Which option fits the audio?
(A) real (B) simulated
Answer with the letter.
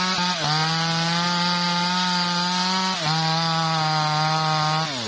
A